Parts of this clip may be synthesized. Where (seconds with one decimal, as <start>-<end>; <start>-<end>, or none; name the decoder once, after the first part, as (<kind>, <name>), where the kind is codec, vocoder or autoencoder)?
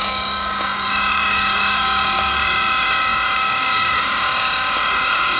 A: 0.0-5.4 (codec, DAC)